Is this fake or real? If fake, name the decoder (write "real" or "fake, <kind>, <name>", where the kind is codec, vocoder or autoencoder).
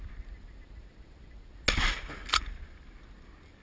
real